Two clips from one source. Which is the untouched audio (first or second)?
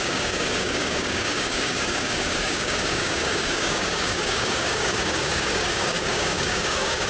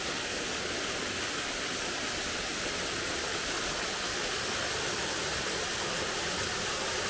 second